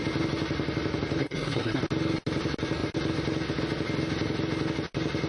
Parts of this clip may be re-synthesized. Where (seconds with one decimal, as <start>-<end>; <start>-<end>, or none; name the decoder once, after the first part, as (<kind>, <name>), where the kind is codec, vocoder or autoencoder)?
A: 1.2-1.8 (codec, SNAC)